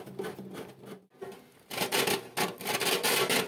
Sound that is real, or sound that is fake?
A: real